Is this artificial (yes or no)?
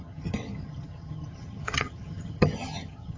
yes